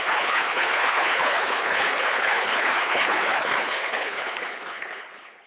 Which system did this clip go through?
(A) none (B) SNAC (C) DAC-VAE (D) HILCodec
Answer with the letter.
D